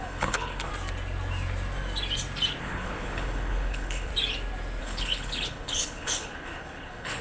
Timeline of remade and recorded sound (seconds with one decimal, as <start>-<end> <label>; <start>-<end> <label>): 0.0-0.7 remade; 0.7-2.6 recorded; 2.6-4.1 remade; 4.1-4.8 recorded; 4.8-7.2 remade

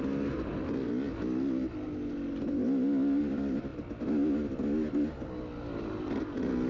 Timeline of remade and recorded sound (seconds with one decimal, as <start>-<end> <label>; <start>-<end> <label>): 0.0-6.7 recorded

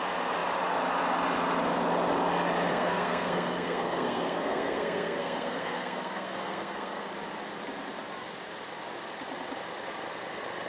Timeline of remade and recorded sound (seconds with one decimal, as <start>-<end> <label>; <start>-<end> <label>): 0.0-2.7 recorded; 2.7-7.1 remade; 7.1-10.7 recorded

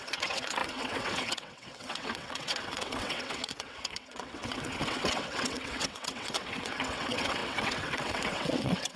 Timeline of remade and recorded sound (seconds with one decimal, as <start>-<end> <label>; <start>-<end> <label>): 0.0-9.0 remade

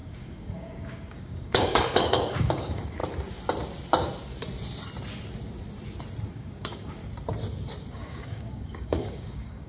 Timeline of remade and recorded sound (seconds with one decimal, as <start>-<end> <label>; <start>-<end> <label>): 0.0-3.0 remade; 3.0-6.3 recorded; 6.3-7.0 remade; 7.0-7.9 recorded; 7.9-9.7 remade

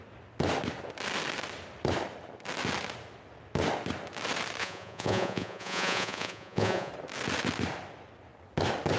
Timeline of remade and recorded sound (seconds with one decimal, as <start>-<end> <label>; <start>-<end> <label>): 0.0-4.6 recorded; 4.6-6.9 remade; 6.9-9.0 recorded

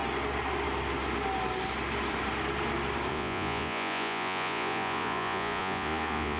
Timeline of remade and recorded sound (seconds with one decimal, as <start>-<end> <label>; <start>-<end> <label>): 0.0-3.1 recorded; 3.1-6.4 remade

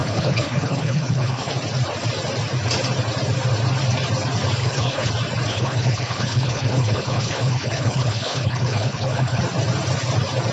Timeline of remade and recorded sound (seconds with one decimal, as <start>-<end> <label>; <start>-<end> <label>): 0.0-1.5 remade; 1.5-4.6 recorded; 4.6-5.1 remade; 5.1-5.5 recorded; 5.5-9.4 remade; 9.4-10.5 recorded